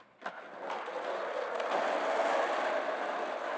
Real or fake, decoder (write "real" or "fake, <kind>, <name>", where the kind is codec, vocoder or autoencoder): real